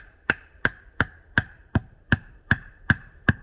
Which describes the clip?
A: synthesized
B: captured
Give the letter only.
A